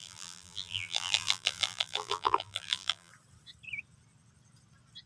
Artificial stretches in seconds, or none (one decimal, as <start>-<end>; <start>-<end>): 0.0-3.1